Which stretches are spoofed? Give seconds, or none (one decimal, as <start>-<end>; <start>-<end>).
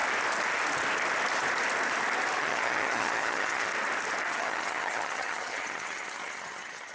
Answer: 2.4-3.7; 4.3-6.9